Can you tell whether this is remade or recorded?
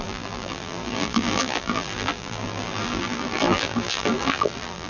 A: remade